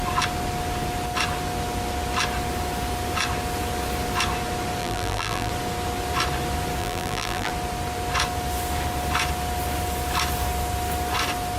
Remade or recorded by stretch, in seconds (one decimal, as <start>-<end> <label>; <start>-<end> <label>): 0.0-4.8 recorded; 4.8-5.5 remade; 5.5-6.8 recorded; 6.8-7.5 remade; 7.5-11.6 recorded

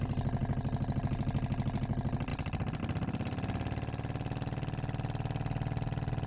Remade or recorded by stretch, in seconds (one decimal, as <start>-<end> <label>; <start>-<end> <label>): 0.0-6.3 recorded

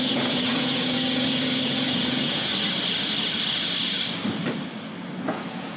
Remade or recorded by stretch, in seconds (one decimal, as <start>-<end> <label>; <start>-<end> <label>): 0.0-2.5 remade; 2.5-5.1 recorded; 5.1-5.8 remade

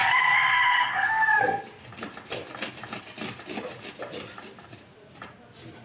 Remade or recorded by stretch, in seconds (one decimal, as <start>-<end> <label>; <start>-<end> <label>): 0.0-1.6 remade; 1.6-5.8 recorded

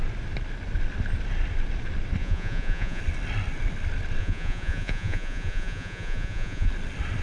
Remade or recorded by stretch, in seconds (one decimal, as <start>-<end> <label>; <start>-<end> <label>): 0.0-2.2 recorded; 2.2-3.0 remade; 3.0-4.2 recorded; 4.2-6.7 remade; 6.7-7.2 recorded

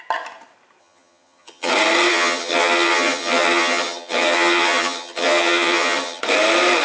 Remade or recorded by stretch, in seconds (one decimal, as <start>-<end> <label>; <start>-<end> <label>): 0.0-0.8 recorded; 0.8-1.7 remade; 1.7-2.1 recorded; 2.1-6.2 remade; 6.2-6.8 recorded

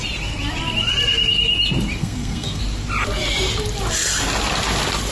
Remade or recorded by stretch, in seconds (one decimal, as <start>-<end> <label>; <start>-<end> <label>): 0.0-2.0 recorded; 2.0-2.6 remade; 2.6-5.1 recorded